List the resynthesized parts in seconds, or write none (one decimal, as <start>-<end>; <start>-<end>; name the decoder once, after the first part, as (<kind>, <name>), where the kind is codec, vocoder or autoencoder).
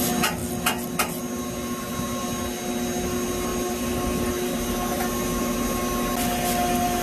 none